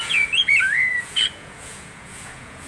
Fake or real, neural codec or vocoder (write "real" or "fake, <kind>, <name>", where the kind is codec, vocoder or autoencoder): fake, vocoder, Vocos